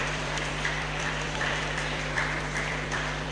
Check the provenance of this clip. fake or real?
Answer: fake